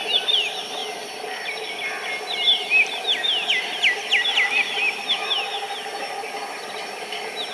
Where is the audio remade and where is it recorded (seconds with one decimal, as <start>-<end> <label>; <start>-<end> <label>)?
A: 0.0-7.5 recorded